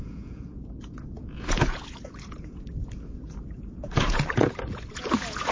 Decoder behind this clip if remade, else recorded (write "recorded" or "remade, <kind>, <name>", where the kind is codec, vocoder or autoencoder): remade, vocoder, Vocos